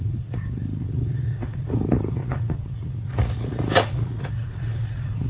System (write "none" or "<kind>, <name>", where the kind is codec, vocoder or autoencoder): vocoder, Vocos